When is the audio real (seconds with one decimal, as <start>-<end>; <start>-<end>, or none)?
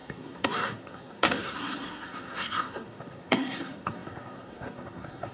none